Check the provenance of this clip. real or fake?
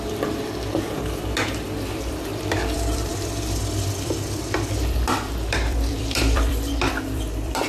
fake